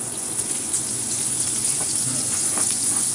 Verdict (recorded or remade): remade